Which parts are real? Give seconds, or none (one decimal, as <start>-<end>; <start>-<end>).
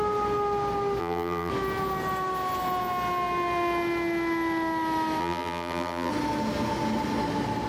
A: 0.0-1.0; 1.5-5.2; 6.1-7.7